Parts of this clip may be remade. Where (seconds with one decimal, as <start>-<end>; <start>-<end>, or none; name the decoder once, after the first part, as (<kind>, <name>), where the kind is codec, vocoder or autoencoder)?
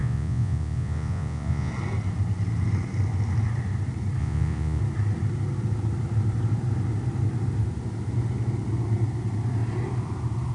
0.0-1.7 (vocoder, Vocos); 4.2-4.8